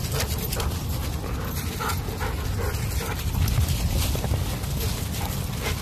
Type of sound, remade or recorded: recorded